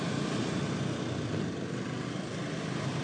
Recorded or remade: recorded